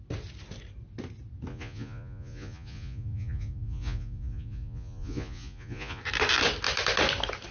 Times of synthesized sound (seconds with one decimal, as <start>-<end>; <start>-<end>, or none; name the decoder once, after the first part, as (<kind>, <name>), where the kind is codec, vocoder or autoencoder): 1.5-6.0 (vocoder, Vocos)